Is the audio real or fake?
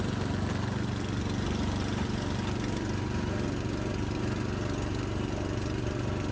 real